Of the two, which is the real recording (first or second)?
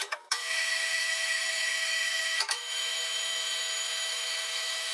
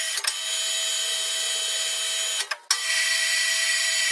second